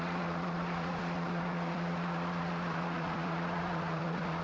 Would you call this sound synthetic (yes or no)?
yes